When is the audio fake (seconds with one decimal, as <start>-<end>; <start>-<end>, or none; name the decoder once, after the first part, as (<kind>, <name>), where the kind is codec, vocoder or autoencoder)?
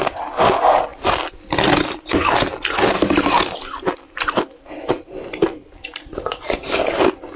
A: 5.9-6.7 (vocoder, BigVGAN v2)